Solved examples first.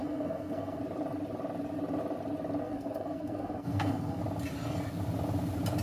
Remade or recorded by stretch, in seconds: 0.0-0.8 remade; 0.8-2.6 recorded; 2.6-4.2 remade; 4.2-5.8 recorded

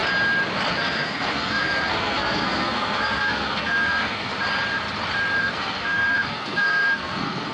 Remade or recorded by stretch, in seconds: 0.0-0.7 recorded; 0.7-4.3 remade; 4.3-5.4 recorded; 5.4-7.5 remade

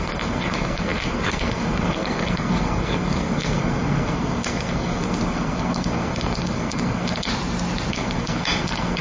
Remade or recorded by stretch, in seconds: 0.0-7.3 remade; 7.3-7.9 recorded; 7.9-9.0 remade

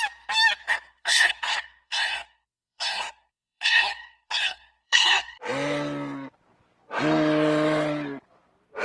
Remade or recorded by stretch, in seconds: 0.0-0.6 recorded; 0.6-5.4 remade; 5.4-8.8 recorded